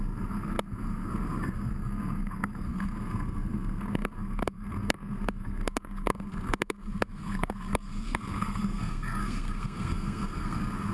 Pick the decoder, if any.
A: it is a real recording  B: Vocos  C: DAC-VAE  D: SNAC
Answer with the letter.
D